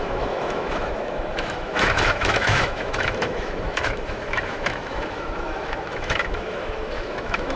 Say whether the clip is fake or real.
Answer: fake